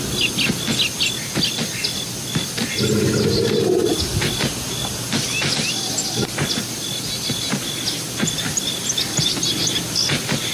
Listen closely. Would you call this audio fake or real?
real